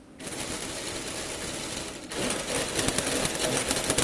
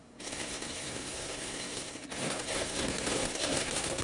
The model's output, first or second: second